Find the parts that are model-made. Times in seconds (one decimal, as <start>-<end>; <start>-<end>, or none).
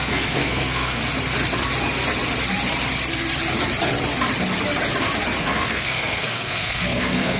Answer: 0.0-1.0; 5.4-7.4